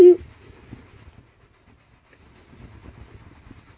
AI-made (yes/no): no